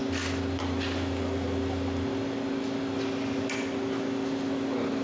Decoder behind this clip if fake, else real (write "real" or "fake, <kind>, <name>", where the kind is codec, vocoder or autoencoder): real